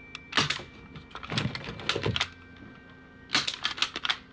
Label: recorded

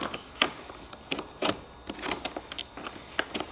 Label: recorded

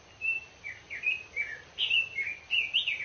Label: recorded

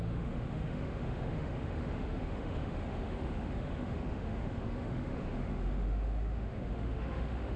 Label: remade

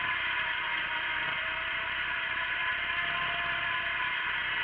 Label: recorded